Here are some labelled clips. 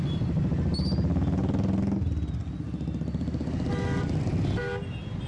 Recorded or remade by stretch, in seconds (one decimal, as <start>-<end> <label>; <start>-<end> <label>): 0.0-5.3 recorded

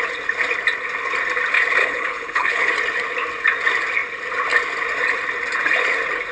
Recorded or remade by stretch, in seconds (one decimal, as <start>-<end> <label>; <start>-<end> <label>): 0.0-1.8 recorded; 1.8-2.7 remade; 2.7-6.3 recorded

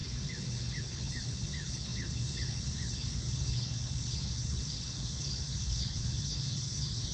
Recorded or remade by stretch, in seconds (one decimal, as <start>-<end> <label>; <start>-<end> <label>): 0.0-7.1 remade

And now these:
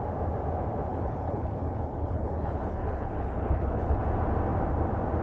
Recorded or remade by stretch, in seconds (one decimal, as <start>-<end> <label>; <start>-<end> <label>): 0.0-0.9 recorded; 0.9-4.0 remade; 4.0-5.2 recorded